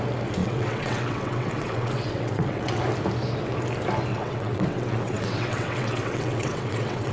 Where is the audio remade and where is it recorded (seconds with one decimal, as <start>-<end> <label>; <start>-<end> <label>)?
0.0-0.4 recorded; 0.4-2.8 remade; 2.8-4.1 recorded; 4.1-7.1 remade